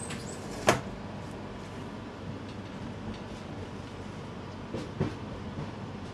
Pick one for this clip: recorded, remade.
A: recorded